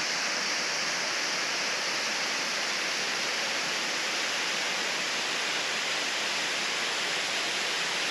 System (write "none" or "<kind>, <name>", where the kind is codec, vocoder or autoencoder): none